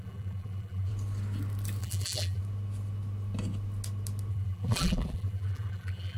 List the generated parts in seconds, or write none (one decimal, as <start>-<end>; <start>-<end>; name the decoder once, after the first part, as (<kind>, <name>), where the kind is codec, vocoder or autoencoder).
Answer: 0.0-0.9 (vocoder, BigVGAN v2); 1.8-2.4; 4.3-6.2